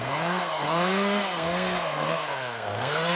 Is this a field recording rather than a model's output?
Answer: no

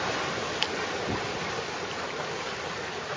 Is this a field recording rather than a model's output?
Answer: yes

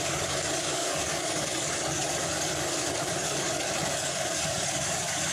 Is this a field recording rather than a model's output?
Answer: no